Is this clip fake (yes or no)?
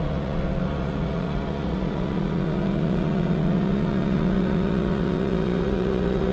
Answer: yes